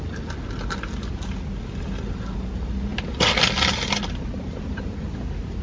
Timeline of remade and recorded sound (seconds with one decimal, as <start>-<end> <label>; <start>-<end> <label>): 0.0-5.6 recorded